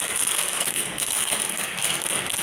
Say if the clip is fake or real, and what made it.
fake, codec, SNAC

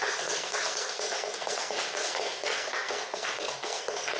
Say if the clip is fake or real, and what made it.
fake, codec, SNAC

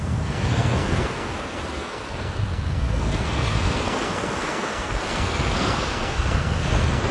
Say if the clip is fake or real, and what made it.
fake, codec, SNAC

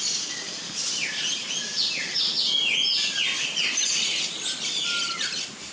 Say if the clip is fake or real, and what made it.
real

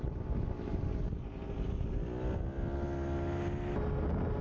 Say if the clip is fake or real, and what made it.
real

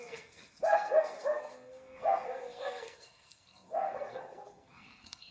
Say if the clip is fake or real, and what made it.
fake, codec, SNAC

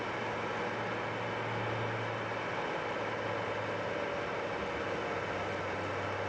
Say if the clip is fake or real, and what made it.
real